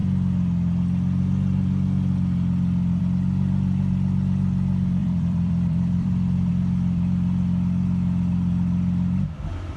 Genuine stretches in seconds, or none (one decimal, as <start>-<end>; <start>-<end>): 0.0-5.0; 6.5-9.8